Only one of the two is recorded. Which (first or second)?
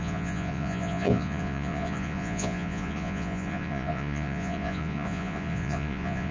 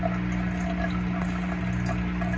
second